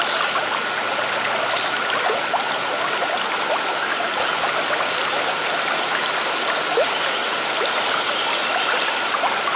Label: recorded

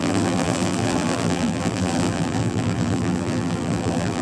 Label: remade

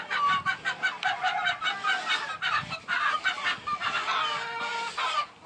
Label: recorded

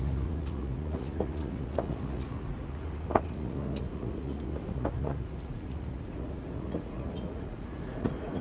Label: remade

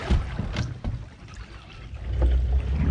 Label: recorded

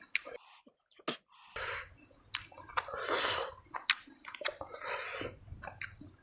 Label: recorded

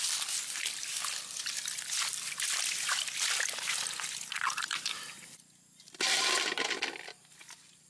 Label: recorded